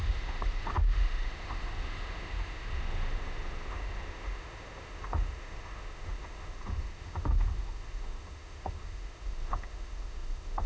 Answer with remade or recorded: remade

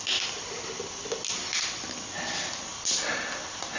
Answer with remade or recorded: recorded